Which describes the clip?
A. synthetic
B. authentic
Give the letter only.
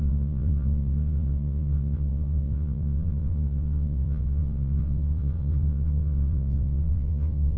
A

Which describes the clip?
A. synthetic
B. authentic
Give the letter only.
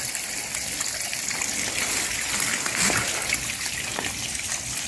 B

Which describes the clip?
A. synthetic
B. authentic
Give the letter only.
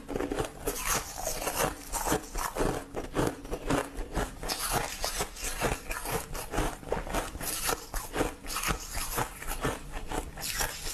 B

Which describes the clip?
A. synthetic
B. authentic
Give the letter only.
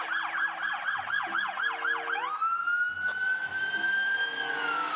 B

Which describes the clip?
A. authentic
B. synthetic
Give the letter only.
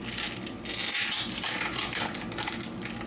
A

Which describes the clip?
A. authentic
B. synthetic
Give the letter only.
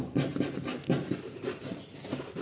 A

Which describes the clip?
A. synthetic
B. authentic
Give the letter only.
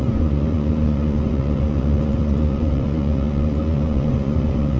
A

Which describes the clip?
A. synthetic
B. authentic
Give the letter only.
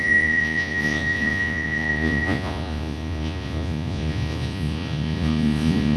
A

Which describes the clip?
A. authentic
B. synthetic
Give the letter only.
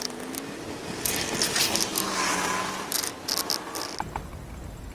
A